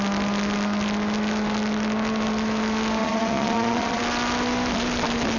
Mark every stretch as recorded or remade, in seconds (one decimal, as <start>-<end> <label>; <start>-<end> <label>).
0.0-3.0 recorded; 3.0-4.0 remade; 4.0-5.4 recorded